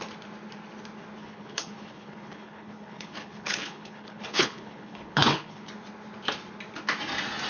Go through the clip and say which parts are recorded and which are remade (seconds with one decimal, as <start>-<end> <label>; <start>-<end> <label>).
0.0-1.2 recorded; 1.2-5.7 remade; 5.7-7.5 recorded